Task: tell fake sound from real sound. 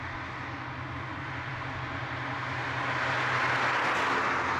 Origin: real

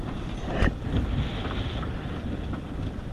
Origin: real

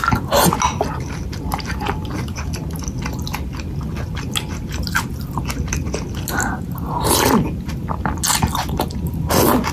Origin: real